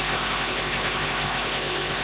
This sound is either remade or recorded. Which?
remade